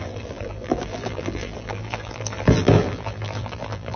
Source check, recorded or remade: remade